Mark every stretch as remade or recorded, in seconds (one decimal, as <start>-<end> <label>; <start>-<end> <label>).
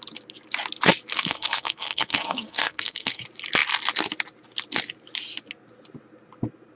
0.0-1.1 recorded; 1.1-3.2 remade; 3.2-6.8 recorded